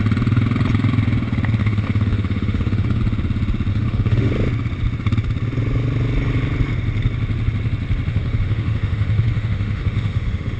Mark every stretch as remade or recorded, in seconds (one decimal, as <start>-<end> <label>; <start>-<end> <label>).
0.0-1.6 recorded; 1.6-3.0 remade; 3.0-3.7 recorded; 3.7-4.3 remade; 4.3-8.1 recorded; 8.1-10.6 remade